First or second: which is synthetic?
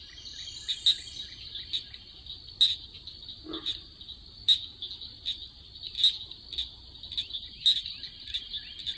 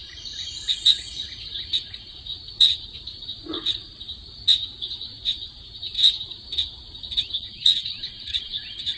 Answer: second